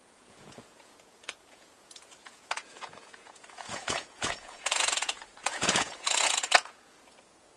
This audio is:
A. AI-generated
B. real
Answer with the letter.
A